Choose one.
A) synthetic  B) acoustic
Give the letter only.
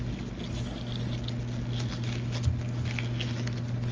B